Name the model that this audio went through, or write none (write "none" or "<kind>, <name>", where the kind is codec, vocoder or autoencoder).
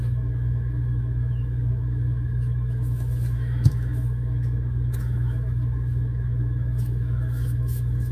autoencoder, DAC-VAE